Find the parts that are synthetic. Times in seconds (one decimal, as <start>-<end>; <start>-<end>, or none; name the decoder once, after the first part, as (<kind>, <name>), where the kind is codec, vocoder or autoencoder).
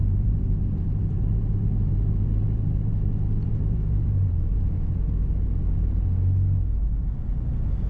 0.0-4.7 (vocoder, BigVGAN v2)